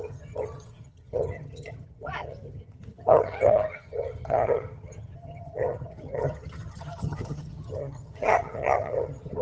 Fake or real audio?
fake